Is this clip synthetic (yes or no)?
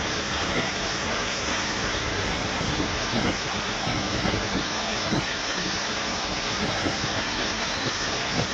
yes